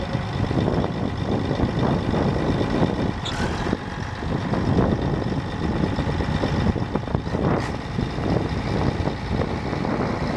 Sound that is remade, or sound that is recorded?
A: recorded